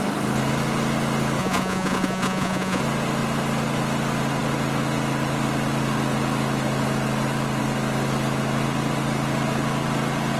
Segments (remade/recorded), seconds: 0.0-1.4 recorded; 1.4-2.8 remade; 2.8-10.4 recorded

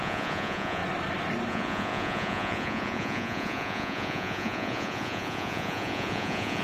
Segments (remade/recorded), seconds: 0.0-0.8 remade; 0.8-1.5 recorded; 1.5-6.6 remade